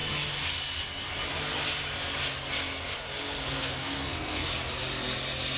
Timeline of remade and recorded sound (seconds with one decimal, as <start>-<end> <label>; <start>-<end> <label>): 0.0-3.4 recorded; 3.4-4.5 remade; 4.5-5.6 recorded